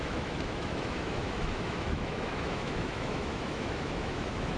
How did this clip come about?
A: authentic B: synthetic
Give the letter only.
B